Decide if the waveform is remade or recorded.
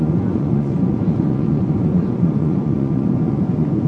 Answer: remade